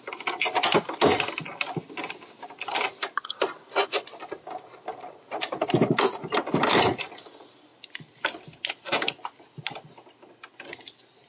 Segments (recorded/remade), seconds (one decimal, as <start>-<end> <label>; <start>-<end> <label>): 0.0-11.3 recorded